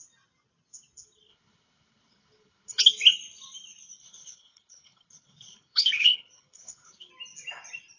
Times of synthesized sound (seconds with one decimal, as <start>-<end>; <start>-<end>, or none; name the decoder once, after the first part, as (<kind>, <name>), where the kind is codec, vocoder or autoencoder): 1.3-2.8 (codec, HILCodec); 4.0-7.1